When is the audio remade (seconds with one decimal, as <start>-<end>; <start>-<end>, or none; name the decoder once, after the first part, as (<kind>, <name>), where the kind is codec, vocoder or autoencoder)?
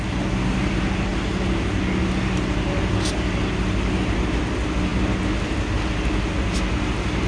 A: none